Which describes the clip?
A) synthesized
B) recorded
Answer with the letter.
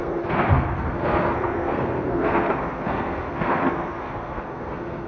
A